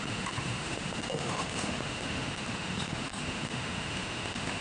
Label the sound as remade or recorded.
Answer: remade